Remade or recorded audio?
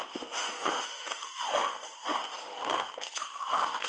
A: remade